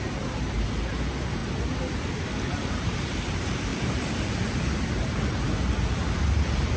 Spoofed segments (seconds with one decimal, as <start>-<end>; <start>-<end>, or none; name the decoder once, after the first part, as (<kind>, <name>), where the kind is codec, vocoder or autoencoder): 0.0-1.4 (vocoder, BigVGAN v2); 2.5-6.8

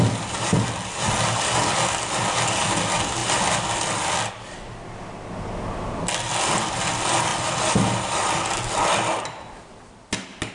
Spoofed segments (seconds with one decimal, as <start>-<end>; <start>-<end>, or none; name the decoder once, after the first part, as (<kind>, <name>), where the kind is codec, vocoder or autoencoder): none

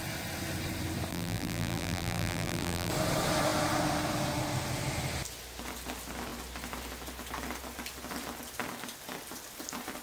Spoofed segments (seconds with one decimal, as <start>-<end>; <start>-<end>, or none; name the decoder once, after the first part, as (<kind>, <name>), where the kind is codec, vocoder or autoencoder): 1.1-2.9 (vocoder, BigVGAN v2)

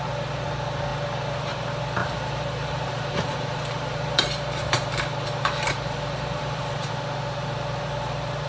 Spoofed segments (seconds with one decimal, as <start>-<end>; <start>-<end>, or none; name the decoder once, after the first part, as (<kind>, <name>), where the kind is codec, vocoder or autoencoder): 2.0-6.9 (vocoder, BigVGAN v2)

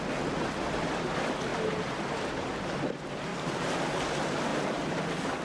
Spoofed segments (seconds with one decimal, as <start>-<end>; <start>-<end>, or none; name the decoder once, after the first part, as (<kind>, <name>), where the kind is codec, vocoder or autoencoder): 3.3-4.0 (vocoder, BigVGAN v2); 4.5-5.0

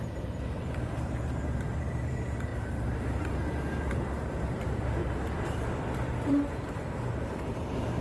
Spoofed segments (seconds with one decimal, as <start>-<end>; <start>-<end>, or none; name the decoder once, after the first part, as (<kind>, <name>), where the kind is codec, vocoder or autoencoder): 0.0-8.0 (vocoder, BigVGAN v2)